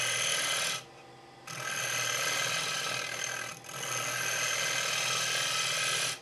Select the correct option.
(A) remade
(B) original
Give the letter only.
B